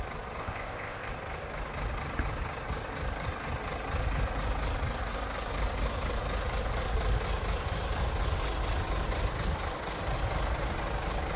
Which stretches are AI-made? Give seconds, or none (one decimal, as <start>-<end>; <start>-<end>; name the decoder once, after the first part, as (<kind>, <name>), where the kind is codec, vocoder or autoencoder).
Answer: 0.4-1.1 (codec, ZipCodec)

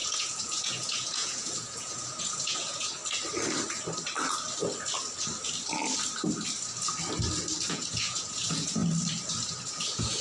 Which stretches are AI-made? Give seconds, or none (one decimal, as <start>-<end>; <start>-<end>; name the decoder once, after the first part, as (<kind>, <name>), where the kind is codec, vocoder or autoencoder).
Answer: 0.0-3.0 (vocoder, Vocos); 7.7-8.8; 9.6-10.2

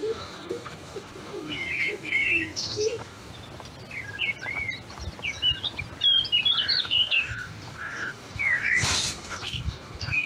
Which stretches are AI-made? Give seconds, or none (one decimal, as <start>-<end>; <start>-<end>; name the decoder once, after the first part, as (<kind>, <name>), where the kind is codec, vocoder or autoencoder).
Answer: 0.0-3.3 (codec, DAC); 6.8-10.3

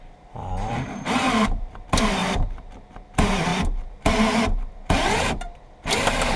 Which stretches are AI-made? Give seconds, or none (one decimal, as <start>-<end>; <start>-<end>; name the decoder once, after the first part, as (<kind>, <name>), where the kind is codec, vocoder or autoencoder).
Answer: 0.0-2.2 (vocoder, BigVGAN v2); 3.1-3.5; 5.3-6.4

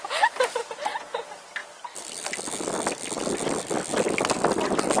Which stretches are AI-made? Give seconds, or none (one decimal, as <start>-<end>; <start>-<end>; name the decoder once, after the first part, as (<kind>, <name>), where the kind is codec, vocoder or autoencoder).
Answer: none

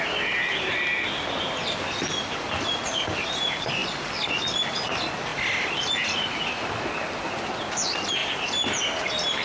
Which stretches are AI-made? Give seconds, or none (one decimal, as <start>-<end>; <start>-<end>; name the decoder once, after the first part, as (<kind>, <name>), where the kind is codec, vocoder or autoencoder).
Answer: 8.2-8.8 (vocoder, BigVGAN v2)

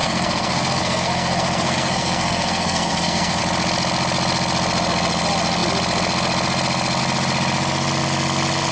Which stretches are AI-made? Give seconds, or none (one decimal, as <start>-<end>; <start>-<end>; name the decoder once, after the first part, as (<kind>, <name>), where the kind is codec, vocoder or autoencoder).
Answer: 0.0-3.4 (codec, SNAC)

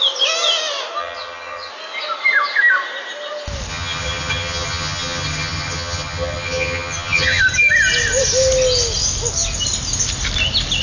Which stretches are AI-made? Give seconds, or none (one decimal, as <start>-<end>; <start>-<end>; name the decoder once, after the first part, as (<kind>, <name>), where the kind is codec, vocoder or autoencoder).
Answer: 1.0-1.7 (vocoder, HiFi-GAN); 3.7-7.4